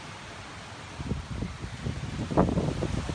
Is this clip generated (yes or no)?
no